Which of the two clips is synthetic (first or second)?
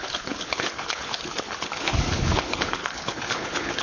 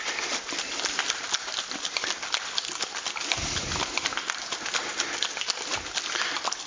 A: first